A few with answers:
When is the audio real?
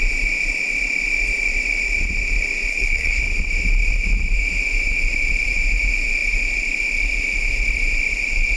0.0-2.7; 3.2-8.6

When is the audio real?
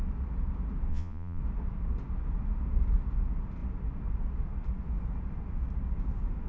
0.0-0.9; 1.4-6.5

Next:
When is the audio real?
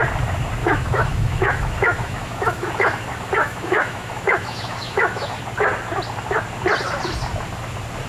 0.0-0.6; 2.7-3.4; 5.4-8.1